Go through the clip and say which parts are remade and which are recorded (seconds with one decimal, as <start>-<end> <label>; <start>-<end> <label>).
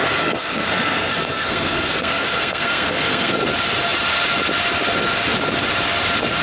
0.0-3.3 remade; 3.3-6.4 recorded